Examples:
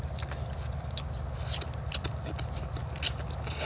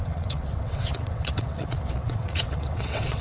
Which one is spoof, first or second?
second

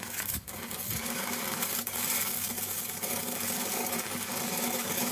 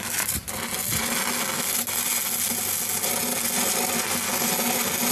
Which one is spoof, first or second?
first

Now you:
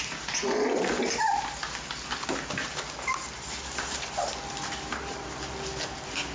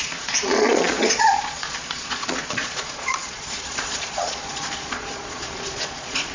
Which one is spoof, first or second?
second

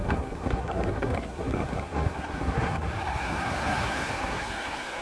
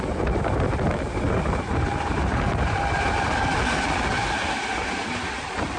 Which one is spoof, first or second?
first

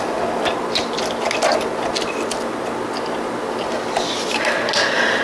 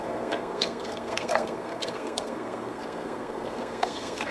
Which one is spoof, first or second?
second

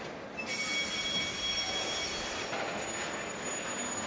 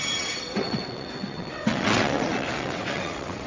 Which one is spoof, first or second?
second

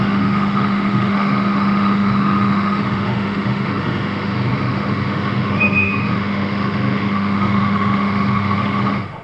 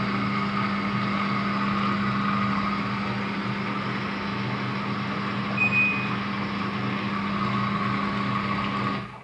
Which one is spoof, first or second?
first